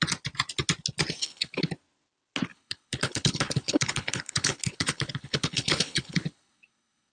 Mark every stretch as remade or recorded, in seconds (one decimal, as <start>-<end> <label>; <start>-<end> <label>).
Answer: 0.0-1.2 recorded; 1.2-1.7 remade; 1.7-2.5 recorded; 2.5-7.1 remade